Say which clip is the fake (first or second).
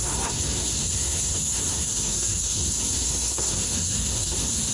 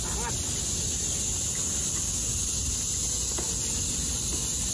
first